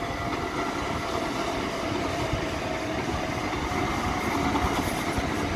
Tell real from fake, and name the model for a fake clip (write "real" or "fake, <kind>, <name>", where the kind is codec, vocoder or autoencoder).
real